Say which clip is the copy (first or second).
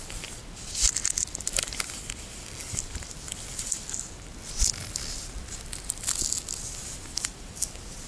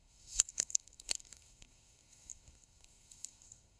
second